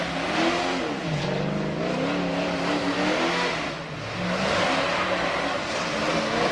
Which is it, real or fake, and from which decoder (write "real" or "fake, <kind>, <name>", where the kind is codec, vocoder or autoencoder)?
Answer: real